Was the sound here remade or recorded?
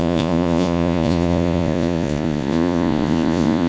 remade